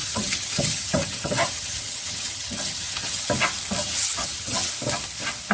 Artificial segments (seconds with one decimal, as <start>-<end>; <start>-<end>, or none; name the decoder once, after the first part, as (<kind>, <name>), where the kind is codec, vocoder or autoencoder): 0.0-3.3 (vocoder, HiFi-GAN); 3.8-4.7